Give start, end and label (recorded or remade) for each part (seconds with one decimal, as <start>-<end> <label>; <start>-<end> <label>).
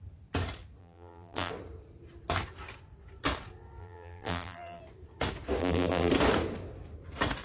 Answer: 0.0-0.8 recorded; 0.8-1.5 remade; 1.5-3.8 recorded; 3.8-4.8 remade; 4.8-5.6 recorded; 5.6-6.1 remade; 6.1-7.4 recorded